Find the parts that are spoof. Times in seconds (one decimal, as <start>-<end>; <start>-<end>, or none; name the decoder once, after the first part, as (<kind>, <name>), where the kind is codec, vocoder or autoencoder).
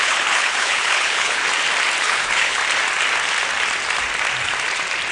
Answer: 0.0-1.4 (codec, HILCodec); 2.0-2.6